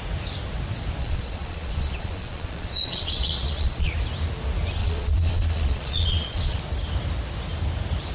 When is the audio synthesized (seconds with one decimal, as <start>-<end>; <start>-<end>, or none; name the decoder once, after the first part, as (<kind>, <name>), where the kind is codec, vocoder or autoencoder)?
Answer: 1.0-3.9 (vocoder, Vocos); 4.8-6.6